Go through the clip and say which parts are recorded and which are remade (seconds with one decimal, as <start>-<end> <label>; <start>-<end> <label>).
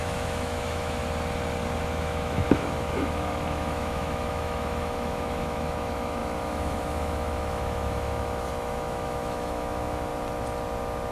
0.0-1.0 remade; 1.0-1.8 recorded; 1.8-10.1 remade; 10.1-11.1 recorded